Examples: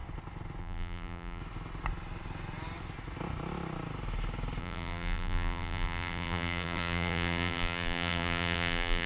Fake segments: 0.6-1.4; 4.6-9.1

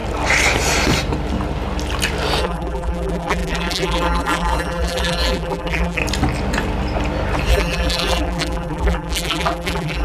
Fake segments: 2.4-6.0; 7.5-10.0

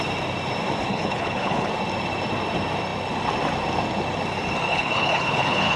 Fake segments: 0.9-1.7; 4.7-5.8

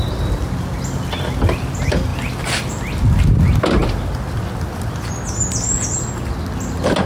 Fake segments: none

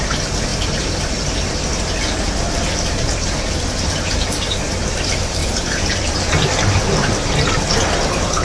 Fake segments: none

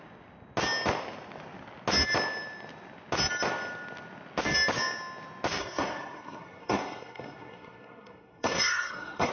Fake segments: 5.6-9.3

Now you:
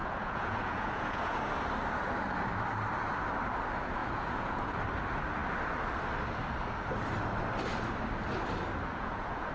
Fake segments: 0.0-1.4; 4.0-4.8; 8.9-9.5